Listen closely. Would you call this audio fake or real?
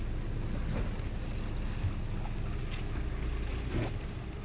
real